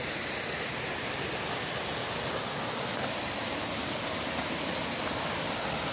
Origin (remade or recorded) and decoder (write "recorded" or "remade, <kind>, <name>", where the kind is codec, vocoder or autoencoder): recorded